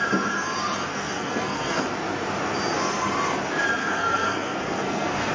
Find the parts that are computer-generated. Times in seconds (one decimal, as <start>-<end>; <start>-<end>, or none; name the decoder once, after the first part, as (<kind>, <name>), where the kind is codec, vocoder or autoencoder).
0.9-1.8 (codec, SNAC); 3.8-5.3